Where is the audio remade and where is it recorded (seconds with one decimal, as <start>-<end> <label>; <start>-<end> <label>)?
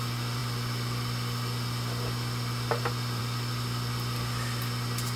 0.0-5.2 recorded